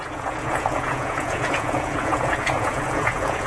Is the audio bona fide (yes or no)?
no